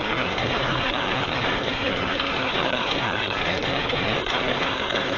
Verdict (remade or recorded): remade